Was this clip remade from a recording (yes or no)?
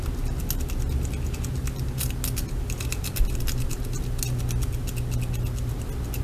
no